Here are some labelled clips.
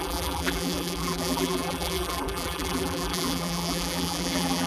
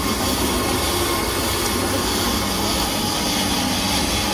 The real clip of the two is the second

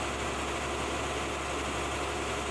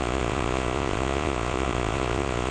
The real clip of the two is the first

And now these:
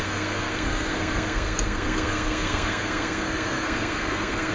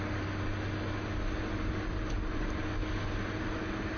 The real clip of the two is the second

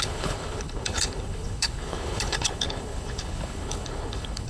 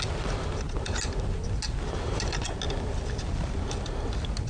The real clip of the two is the second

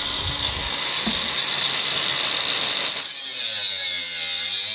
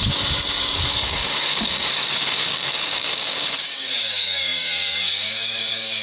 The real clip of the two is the first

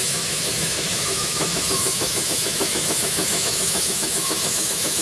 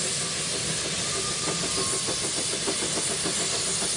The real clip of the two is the second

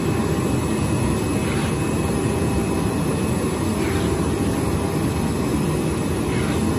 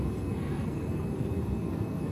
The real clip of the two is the first